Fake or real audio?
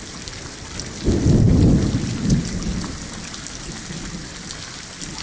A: real